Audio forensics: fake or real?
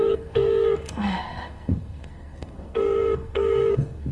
fake